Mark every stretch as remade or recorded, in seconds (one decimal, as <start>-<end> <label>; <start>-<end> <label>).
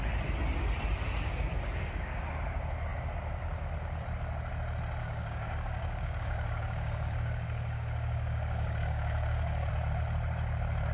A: 0.0-1.1 recorded; 1.1-2.2 remade; 2.2-5.0 recorded; 5.0-9.7 remade; 9.7-10.9 recorded